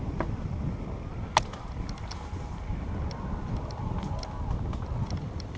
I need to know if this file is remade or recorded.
recorded